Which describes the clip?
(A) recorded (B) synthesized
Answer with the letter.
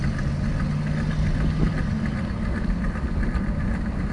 A